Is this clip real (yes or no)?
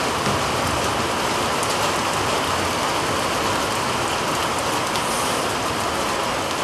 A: yes